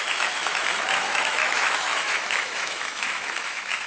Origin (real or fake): fake